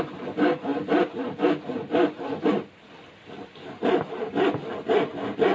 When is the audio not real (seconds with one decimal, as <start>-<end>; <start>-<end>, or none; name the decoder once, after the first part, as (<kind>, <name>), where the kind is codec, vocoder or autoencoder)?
none